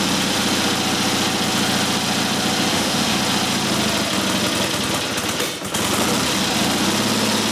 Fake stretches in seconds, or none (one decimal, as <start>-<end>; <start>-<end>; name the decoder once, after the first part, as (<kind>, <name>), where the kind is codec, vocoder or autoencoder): 2.7-3.2 (autoencoder, DAC-VAE)

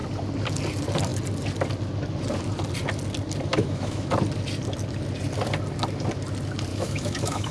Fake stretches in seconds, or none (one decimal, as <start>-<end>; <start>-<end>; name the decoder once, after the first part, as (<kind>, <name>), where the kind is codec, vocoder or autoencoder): 3.5-4.1 (autoencoder, DAC-VAE); 6.7-7.5

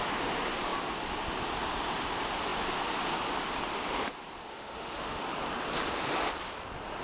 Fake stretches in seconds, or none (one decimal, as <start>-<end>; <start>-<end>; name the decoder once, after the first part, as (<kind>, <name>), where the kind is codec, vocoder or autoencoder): 4.5-5.2 (autoencoder, DAC-VAE)

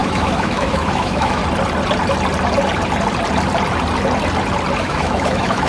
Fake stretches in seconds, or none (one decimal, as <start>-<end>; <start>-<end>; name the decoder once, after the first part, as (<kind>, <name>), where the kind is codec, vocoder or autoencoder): 0.0-1.4 (autoencoder, DAC-VAE); 4.8-5.7

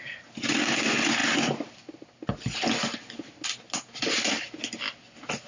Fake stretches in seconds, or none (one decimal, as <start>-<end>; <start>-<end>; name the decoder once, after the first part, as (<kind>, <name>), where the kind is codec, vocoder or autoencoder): none

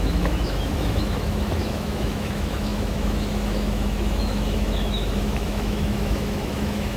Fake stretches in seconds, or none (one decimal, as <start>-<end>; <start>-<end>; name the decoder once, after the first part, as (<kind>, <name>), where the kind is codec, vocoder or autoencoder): 0.0-7.0 (autoencoder, DAC-VAE)

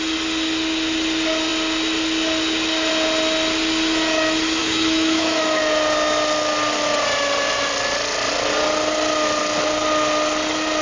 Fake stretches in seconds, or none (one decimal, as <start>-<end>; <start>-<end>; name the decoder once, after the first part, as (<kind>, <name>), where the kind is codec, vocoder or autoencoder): 4.6-5.6 (autoencoder, DAC-VAE)

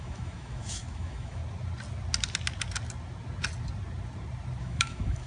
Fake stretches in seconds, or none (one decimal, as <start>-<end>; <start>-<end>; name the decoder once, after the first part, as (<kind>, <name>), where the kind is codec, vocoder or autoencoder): 0.0-1.4 (autoencoder, DAC-VAE); 4.6-5.3